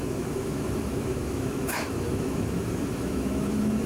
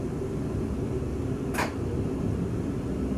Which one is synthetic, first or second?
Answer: first